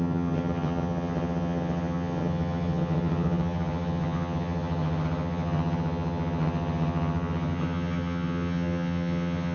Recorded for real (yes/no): no